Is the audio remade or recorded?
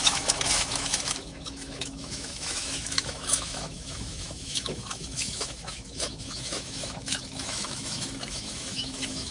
remade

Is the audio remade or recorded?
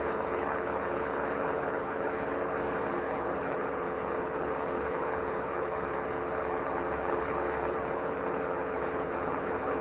remade